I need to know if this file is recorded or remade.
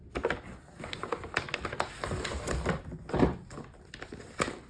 recorded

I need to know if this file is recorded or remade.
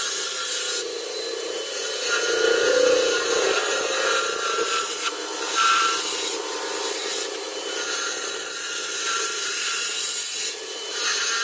remade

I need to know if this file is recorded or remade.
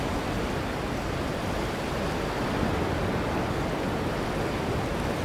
recorded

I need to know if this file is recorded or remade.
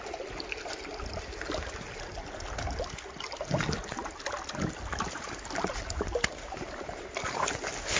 recorded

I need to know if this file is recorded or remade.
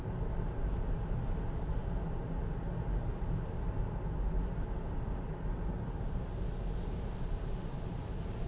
recorded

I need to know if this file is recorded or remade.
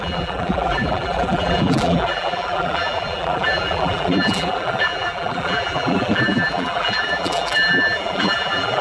remade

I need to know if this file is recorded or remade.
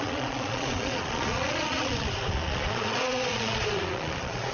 remade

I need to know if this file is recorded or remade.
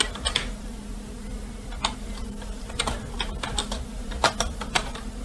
recorded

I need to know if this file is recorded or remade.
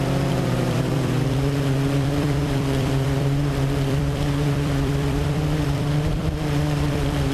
remade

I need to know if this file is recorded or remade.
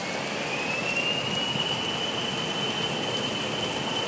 recorded